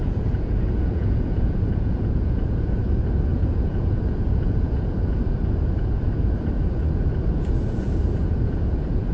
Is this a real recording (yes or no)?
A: no